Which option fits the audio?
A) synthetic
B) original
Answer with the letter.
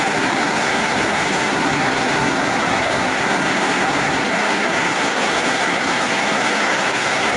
A